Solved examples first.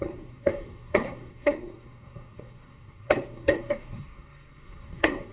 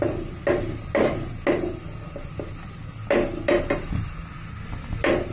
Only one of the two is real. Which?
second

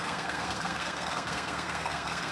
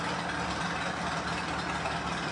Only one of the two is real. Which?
second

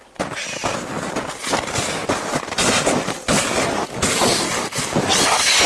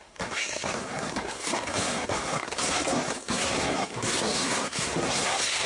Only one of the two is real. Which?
first